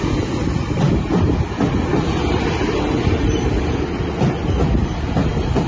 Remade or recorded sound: recorded